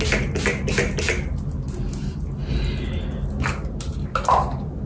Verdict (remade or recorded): recorded